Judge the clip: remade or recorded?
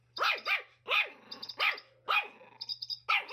recorded